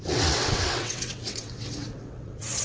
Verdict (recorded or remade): remade